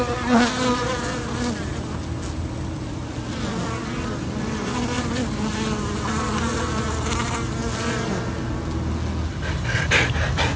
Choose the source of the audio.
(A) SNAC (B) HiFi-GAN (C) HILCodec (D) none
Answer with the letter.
D